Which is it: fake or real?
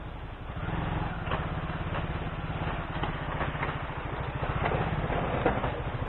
real